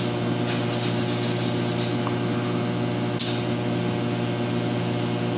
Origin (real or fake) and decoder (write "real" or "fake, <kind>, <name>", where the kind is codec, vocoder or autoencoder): real